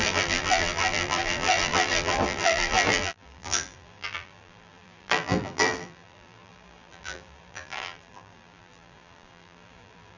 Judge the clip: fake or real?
fake